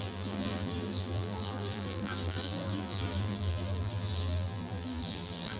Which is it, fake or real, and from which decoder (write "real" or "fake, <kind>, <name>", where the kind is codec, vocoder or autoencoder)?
fake, vocoder, BigVGAN v2